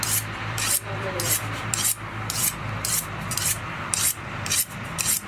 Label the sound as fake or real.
fake